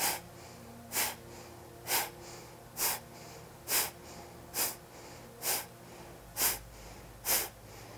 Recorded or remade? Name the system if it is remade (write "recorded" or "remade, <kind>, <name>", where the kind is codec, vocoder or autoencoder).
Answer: recorded